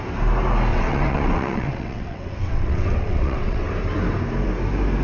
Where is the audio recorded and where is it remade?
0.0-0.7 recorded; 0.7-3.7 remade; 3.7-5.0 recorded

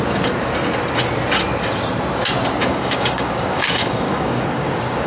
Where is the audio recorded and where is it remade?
0.0-2.6 recorded; 2.6-5.1 remade

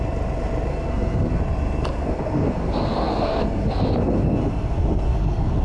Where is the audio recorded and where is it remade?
0.0-0.7 recorded; 0.7-1.4 remade; 1.4-1.9 recorded; 1.9-5.6 remade

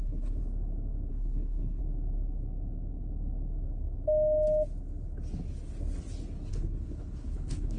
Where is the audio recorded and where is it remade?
0.0-0.4 remade; 0.4-1.1 recorded; 1.1-1.8 remade; 1.8-6.5 recorded; 6.5-7.8 remade